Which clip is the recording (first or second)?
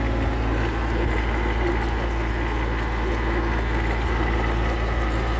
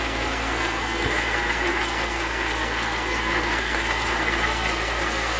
first